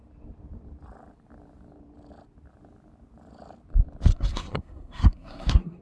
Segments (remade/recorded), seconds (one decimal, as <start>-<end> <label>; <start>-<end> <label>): 0.0-4.1 recorded; 4.1-5.8 remade